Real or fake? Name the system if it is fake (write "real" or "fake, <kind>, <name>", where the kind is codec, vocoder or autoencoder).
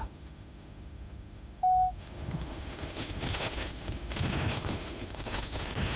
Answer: fake, autoencoder, DAC-VAE